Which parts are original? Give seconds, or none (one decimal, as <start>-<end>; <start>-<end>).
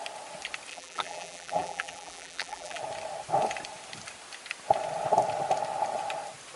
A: 0.0-0.7; 2.8-6.6